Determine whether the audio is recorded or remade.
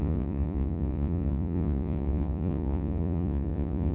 remade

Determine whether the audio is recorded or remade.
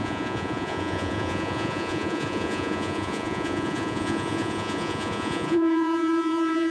remade